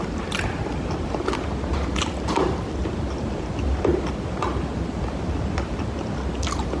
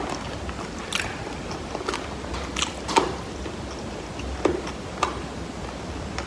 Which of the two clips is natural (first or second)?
second